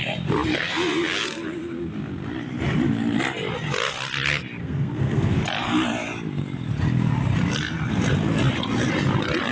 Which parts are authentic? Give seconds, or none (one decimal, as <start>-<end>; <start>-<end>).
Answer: 0.0-4.6; 5.3-9.5

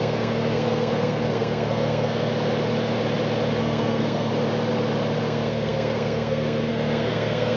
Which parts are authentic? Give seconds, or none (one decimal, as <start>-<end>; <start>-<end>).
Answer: 2.3-3.6; 4.3-5.2

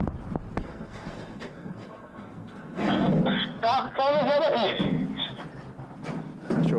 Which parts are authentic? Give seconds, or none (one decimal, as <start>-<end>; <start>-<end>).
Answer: 0.0-0.6; 3.2-6.8